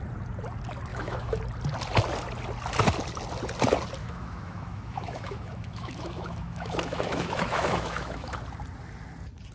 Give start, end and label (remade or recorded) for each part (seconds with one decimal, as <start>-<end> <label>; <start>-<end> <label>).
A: 0.0-0.9 recorded; 0.9-1.4 remade; 1.4-4.0 recorded; 4.0-8.4 remade; 8.4-9.5 recorded